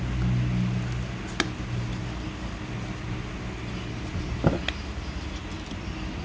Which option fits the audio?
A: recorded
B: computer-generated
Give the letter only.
A